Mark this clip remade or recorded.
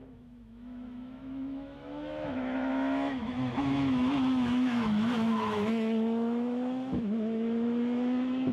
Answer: remade